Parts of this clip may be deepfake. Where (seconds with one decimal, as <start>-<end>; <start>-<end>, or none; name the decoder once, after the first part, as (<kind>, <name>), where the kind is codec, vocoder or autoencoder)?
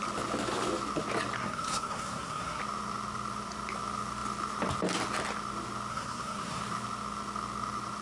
1.4-2.6 (codec, SNAC); 5.9-6.6